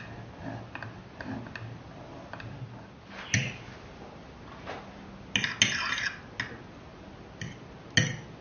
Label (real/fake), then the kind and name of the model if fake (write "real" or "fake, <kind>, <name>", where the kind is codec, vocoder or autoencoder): real